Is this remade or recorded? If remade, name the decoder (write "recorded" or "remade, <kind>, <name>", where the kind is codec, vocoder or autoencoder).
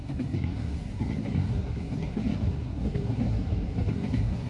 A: remade, codec, SNAC